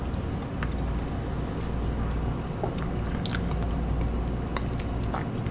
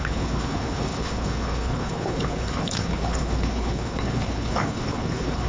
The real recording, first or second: first